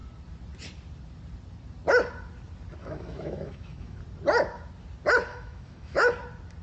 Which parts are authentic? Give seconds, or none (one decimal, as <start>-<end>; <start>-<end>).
0.0-2.8; 4.0-5.3; 6.1-6.6